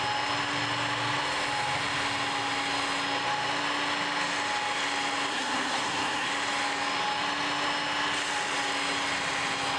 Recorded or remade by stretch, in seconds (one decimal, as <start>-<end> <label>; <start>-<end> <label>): 0.0-5.3 recorded; 5.3-6.3 remade; 6.3-9.8 recorded